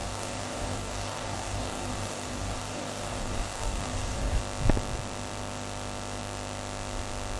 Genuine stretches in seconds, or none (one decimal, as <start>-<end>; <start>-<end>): 4.4-7.4